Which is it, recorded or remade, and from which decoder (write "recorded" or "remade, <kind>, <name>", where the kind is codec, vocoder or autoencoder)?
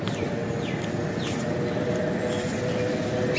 recorded